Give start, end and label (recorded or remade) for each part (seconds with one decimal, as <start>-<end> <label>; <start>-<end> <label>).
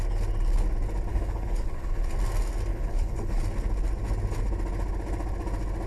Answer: 0.0-1.1 recorded; 1.1-2.1 remade; 2.1-2.7 recorded; 2.7-3.4 remade; 3.4-5.9 recorded